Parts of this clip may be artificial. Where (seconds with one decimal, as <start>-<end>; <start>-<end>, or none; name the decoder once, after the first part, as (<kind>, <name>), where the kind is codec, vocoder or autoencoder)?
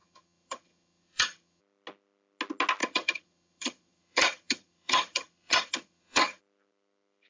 0.0-1.6 (vocoder, HiFi-GAN); 2.8-6.4